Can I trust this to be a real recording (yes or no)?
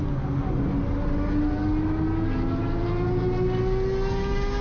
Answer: yes